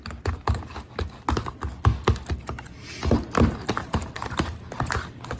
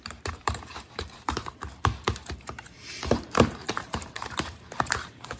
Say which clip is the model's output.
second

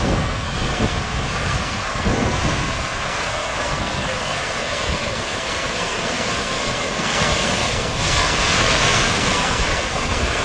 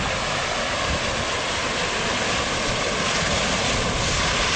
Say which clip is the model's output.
first